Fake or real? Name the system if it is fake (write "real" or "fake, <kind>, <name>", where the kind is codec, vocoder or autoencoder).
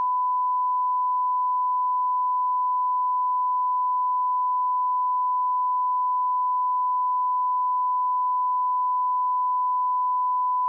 real